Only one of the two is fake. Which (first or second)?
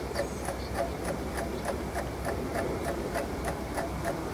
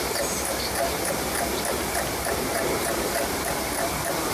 second